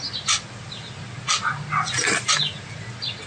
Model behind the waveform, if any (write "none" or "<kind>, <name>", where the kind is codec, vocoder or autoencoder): none